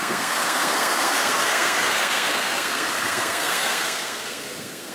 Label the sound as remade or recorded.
remade